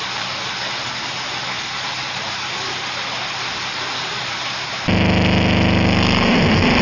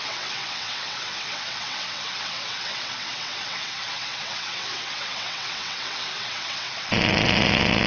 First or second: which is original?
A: first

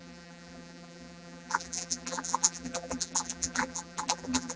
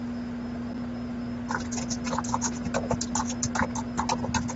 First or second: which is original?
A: second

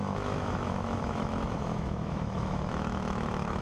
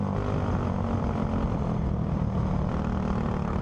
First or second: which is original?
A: second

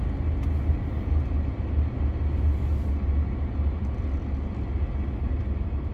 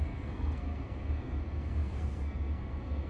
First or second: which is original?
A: first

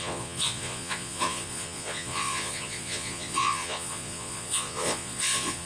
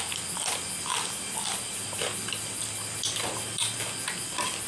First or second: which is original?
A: second